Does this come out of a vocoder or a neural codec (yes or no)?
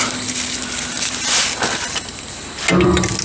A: no